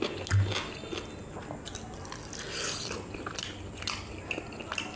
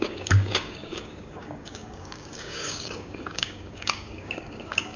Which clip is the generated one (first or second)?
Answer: second